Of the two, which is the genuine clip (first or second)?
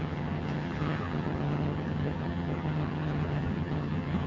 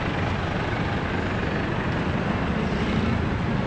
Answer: second